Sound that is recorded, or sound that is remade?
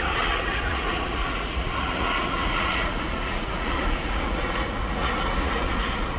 remade